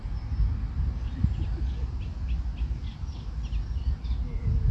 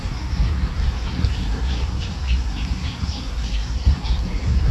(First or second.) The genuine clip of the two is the first